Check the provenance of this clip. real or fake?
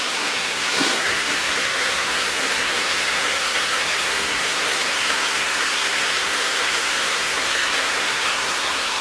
fake